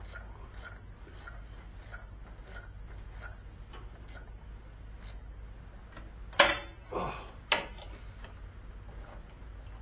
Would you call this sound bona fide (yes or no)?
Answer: yes